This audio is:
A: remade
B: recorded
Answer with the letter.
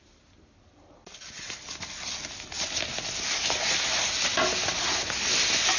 B